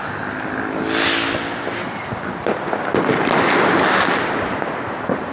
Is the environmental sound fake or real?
real